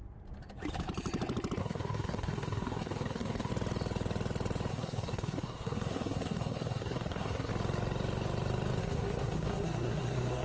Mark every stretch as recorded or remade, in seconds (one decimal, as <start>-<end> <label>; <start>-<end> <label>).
0.0-1.6 recorded; 1.6-3.5 remade; 3.5-4.7 recorded; 4.7-7.5 remade; 7.5-8.8 recorded; 8.8-10.4 remade